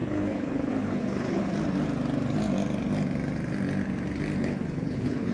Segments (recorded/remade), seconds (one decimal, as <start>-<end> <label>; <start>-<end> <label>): 0.0-1.5 remade; 1.5-4.4 recorded; 4.4-5.3 remade